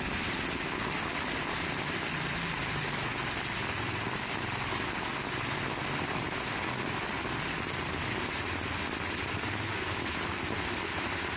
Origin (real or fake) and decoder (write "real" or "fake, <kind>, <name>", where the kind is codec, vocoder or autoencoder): real